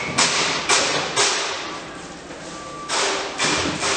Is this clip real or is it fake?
real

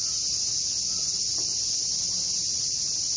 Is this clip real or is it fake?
real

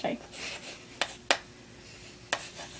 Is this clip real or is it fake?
real